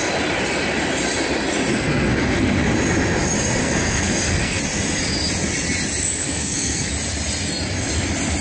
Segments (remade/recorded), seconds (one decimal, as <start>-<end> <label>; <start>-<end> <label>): 0.0-1.7 recorded; 1.7-2.6 remade; 2.6-3.6 recorded; 3.6-4.6 remade; 4.6-6.2 recorded; 6.2-6.9 remade; 6.9-8.4 recorded